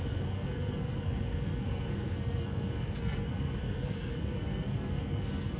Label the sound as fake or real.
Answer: fake